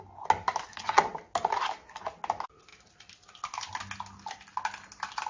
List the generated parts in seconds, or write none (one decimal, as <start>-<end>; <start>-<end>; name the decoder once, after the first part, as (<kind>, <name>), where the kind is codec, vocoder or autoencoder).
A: none